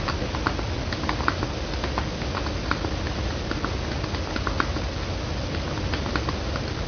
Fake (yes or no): no